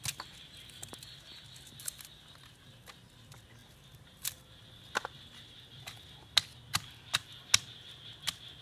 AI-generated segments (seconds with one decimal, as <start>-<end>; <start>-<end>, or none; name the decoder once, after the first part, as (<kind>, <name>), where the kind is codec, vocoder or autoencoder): none